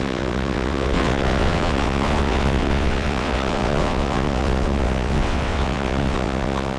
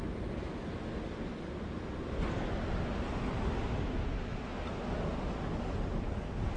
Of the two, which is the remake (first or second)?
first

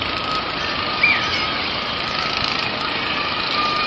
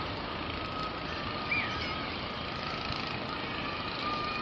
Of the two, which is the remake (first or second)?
first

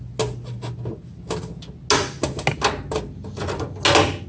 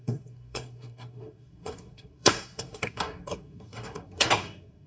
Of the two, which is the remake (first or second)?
second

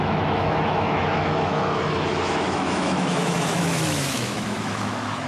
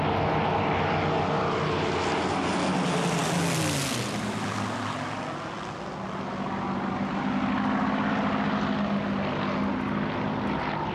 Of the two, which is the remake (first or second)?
first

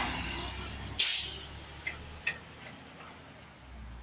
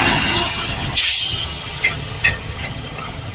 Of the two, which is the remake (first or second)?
second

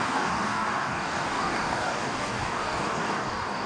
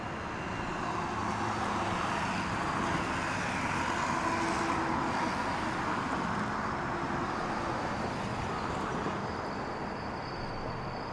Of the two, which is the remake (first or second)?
first